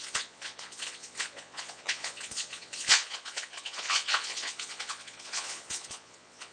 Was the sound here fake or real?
fake